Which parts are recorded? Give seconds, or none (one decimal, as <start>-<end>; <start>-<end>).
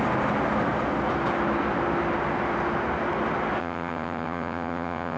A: 0.0-3.6